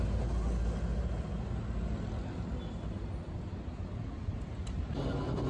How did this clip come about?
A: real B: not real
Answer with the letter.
A